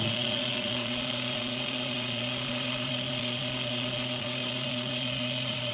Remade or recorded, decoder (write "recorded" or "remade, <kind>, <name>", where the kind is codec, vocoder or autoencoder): remade, vocoder, Vocos